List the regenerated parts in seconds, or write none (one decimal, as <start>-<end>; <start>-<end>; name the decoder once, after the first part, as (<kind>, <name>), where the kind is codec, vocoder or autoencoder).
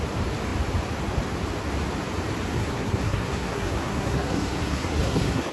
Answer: 2.6-5.5 (codec, SNAC)